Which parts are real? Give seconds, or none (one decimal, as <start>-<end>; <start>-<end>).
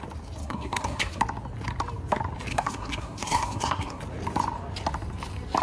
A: 0.0-0.4; 1.2-2.5; 4.0-5.6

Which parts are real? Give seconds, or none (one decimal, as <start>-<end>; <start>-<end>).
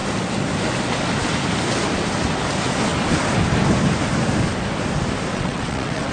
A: 0.0-5.3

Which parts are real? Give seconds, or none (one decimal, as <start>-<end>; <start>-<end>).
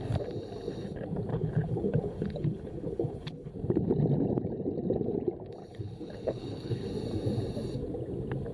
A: 0.0-1.3; 3.5-5.6; 6.9-8.5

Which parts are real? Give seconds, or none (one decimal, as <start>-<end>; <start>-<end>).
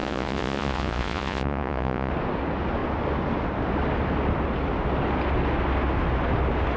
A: 2.1-6.8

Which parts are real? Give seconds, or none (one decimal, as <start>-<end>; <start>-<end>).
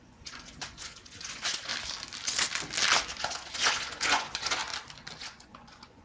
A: 1.7-3.1; 4.6-5.2